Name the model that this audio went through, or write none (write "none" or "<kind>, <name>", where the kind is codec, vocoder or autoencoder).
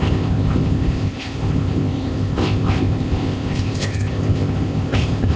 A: codec, ZipCodec